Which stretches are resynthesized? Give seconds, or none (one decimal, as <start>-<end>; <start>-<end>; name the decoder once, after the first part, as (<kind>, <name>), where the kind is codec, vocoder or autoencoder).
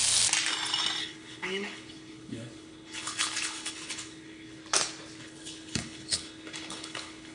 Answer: 1.0-4.6 (codec, HILCodec); 5.2-7.3